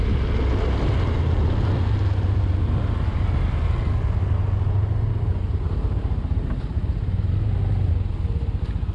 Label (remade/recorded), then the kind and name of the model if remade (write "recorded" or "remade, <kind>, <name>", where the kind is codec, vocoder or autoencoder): recorded